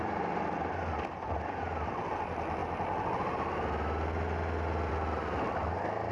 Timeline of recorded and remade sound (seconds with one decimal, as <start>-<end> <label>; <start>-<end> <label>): 0.0-6.1 recorded